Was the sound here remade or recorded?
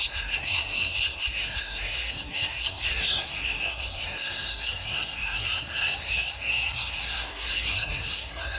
remade